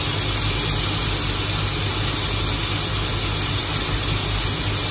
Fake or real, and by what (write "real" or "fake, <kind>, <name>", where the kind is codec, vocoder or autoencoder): real